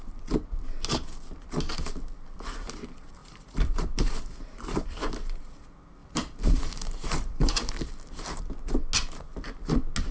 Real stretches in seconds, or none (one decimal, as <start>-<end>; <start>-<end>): 0.0-3.2; 5.4-6.0; 7.9-10.1